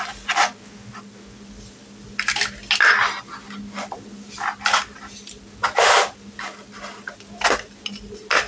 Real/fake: real